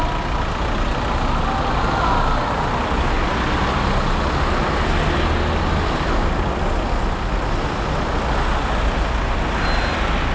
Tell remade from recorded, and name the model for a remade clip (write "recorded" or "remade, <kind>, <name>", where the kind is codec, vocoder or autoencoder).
recorded